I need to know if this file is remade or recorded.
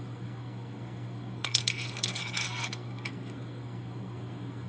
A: remade